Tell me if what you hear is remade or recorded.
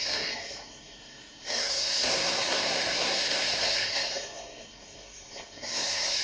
remade